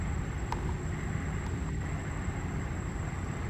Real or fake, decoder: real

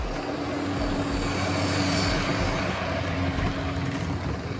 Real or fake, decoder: real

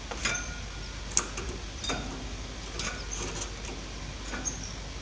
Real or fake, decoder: real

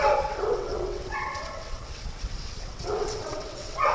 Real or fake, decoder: fake, vocoder, WaveNeXt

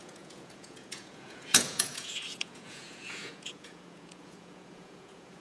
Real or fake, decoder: fake, vocoder, Vocos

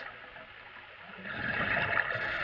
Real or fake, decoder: real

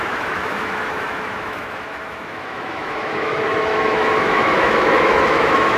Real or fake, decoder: fake, autoencoder, DAC-VAE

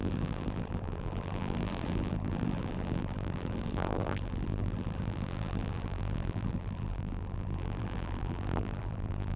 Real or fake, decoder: fake, vocoder, BigVGAN v2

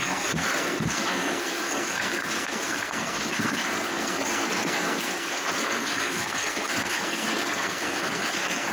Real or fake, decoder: fake, codec, SNAC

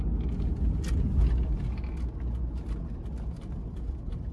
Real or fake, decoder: real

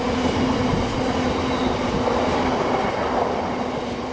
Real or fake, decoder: real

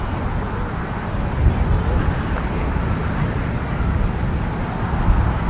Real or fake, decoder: real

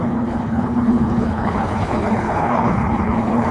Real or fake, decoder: fake, codec, HILCodec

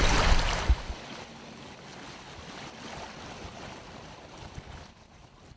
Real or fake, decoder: fake, vocoder, BigVGAN v2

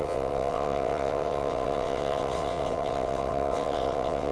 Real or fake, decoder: fake, vocoder, WaveNeXt